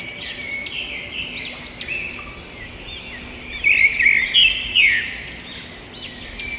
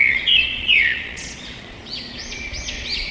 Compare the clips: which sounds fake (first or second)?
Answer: second